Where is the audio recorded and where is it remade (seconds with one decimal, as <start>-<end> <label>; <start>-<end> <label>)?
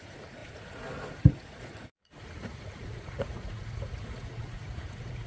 0.0-5.3 remade